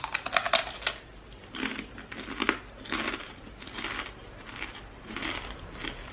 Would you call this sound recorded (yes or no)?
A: yes